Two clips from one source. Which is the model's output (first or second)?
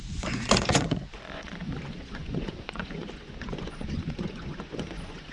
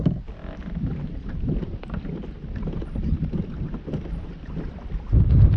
first